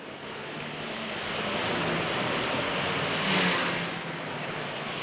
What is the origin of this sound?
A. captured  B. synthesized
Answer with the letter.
A